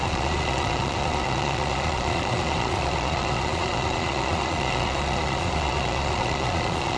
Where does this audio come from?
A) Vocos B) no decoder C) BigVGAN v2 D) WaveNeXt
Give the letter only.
A